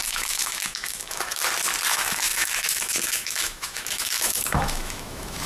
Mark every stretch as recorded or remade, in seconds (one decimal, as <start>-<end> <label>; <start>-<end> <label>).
0.0-1.4 remade; 1.4-1.9 recorded; 1.9-5.5 remade